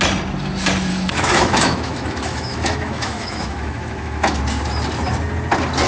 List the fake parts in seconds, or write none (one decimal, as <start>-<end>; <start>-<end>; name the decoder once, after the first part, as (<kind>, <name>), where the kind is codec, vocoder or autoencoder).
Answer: 0.9-4.4 (autoencoder, DAC-VAE)